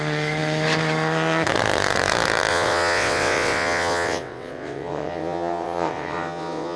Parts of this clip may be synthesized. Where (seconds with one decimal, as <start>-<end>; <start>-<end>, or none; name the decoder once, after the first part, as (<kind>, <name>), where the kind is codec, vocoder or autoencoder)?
2.5-6.8 (vocoder, WaveNeXt)